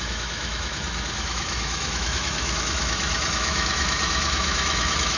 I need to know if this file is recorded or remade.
remade